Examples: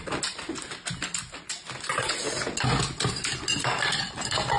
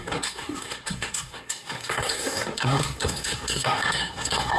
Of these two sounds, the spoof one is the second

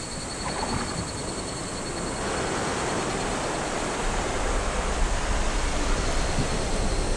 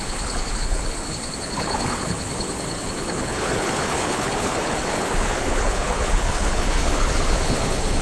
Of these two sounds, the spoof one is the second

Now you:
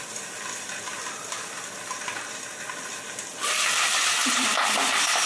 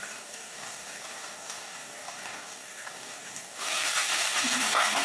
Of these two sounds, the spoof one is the second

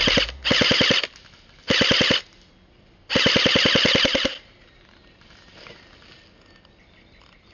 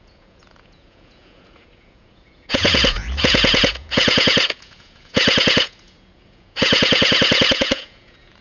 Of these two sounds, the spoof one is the second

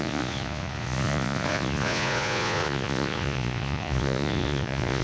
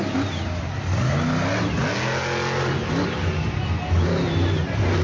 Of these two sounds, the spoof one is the first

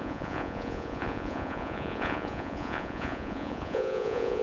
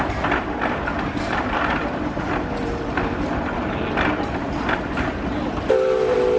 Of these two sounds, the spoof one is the first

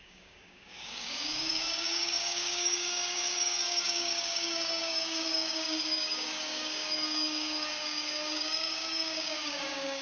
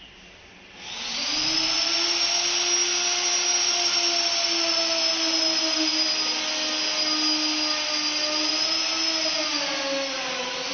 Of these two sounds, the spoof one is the first